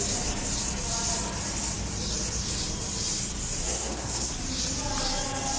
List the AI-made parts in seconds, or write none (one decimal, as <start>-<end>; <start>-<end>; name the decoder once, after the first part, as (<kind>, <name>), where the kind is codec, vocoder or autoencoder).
3.6-4.3 (codec, SNAC)